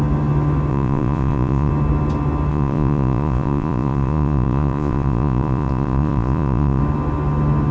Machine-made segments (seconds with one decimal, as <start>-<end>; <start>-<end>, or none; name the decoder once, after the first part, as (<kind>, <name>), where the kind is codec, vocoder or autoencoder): 0.7-1.7 (vocoder, Vocos); 2.5-6.8

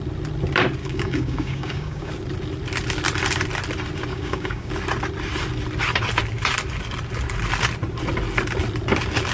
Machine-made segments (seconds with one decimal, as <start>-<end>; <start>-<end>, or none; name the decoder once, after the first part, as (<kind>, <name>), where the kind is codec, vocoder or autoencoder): 0.8-2.1 (codec, DAC); 4.1-4.7

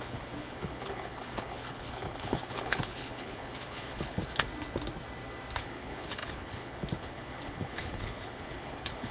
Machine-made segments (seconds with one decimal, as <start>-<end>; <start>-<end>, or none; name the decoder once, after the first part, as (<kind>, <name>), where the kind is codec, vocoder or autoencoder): 0.0-4.2 (codec, HILCodec); 5.6-9.1

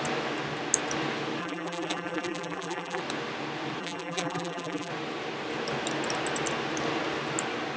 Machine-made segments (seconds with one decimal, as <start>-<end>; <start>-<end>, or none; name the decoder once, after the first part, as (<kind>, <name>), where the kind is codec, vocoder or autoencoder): 1.4-3.0 (vocoder, BigVGAN v2); 3.8-4.9

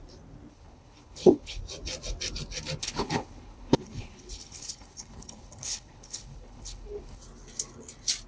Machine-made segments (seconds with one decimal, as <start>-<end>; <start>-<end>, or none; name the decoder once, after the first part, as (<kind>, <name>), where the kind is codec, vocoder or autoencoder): 0.5-1.6 (codec, HILCodec); 2.8-7.2

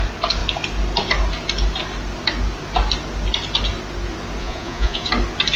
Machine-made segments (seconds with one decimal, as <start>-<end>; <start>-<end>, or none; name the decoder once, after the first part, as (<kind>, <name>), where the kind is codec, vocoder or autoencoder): 4.4-5.1 (vocoder, Vocos)